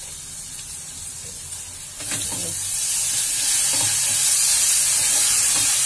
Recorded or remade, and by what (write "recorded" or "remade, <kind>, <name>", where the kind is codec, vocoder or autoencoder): recorded